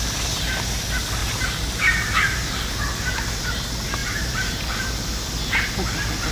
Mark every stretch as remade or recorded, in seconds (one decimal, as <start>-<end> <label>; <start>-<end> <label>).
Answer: 0.0-1.2 recorded; 1.2-3.3 remade; 3.3-4.0 recorded; 4.0-4.8 remade; 4.8-6.3 recorded

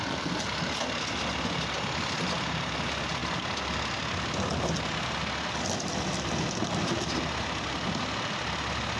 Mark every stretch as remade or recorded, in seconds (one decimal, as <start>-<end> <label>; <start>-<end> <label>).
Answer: 0.0-9.0 recorded

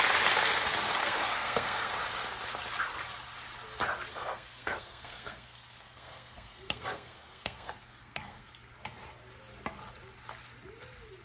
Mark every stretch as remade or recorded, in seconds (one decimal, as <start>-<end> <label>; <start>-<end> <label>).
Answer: 0.0-1.0 recorded; 1.0-1.9 remade; 1.9-4.1 recorded; 4.1-8.5 remade; 8.5-11.2 recorded

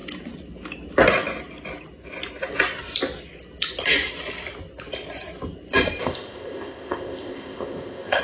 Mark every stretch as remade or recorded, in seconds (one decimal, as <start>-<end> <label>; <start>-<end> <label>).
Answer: 0.0-6.0 recorded; 6.0-8.2 remade